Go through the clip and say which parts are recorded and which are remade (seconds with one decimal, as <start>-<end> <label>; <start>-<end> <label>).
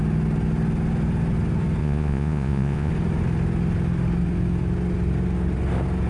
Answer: 0.0-1.8 recorded; 1.8-2.9 remade; 2.9-6.1 recorded